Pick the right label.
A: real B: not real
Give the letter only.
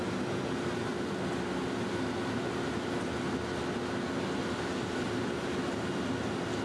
A